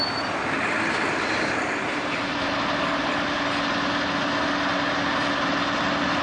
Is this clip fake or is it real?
real